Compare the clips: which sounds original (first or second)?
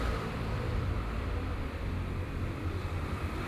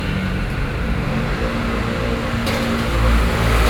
second